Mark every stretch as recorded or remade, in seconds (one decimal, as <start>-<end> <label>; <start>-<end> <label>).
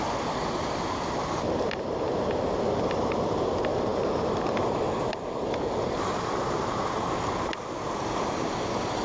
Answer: 0.0-9.0 recorded